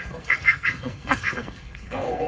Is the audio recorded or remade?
remade